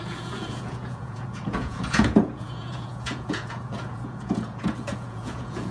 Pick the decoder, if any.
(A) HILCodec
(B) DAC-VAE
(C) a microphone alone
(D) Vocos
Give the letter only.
D